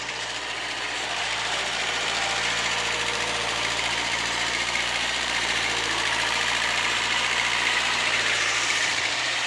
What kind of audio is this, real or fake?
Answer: fake